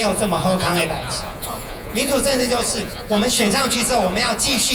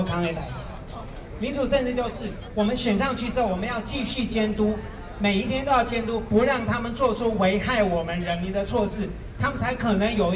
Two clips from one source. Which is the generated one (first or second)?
first